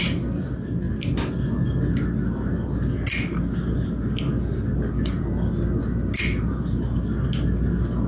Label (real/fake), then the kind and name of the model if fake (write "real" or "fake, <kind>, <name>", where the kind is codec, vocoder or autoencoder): real